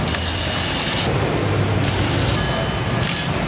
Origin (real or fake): real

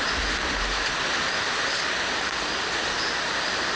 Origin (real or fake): real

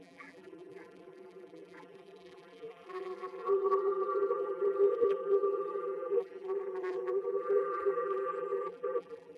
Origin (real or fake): fake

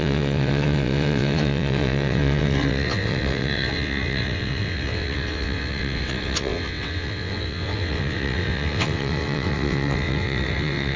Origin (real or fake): fake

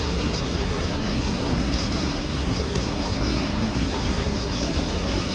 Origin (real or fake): fake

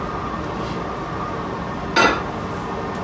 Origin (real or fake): real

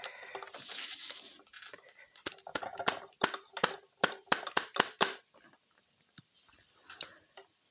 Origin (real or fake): real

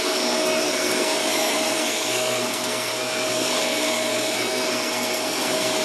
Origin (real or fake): fake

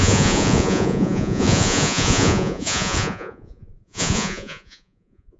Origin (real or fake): fake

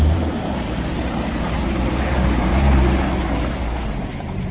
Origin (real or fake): fake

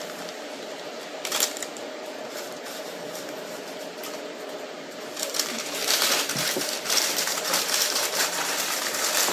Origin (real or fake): fake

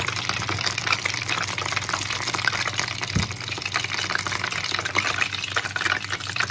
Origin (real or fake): real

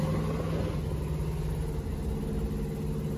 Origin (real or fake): real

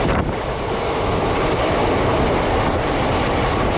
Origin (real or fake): real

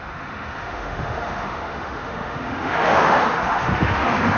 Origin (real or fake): fake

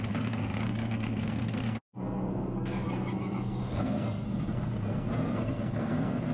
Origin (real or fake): fake